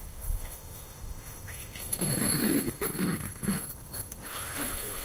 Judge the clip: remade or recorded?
remade